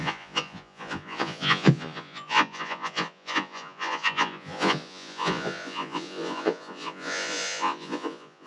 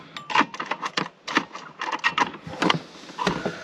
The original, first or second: second